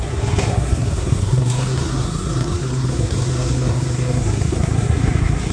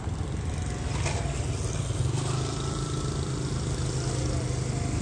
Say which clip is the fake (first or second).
first